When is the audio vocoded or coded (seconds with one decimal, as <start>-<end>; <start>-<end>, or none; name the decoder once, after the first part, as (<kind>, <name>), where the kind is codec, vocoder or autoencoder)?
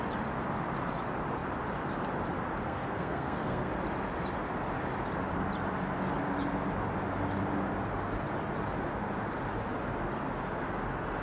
2.6-3.7 (codec, SNAC)